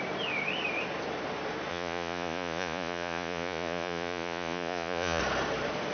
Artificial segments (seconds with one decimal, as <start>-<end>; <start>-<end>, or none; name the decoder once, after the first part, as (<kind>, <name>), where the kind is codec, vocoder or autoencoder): 1.7-5.2 (vocoder, Vocos)